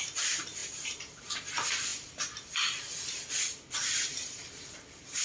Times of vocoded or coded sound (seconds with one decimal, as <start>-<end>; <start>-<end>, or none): none